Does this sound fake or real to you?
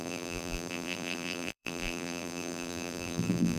fake